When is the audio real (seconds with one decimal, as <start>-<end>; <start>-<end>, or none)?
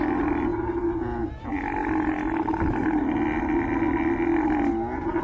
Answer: 0.0-5.2